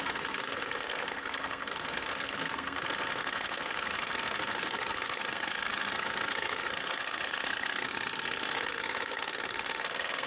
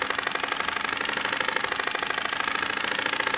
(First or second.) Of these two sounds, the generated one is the first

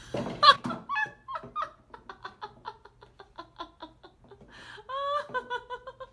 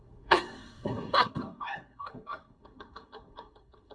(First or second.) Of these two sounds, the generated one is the second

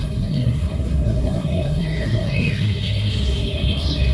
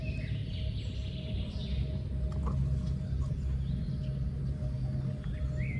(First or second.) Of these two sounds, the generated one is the first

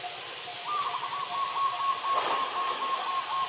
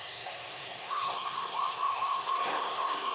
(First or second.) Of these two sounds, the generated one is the second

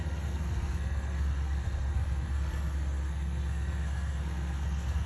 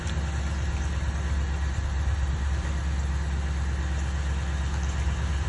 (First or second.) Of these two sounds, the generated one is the first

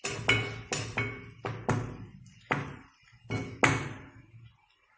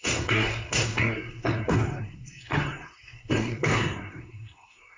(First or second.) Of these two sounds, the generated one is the second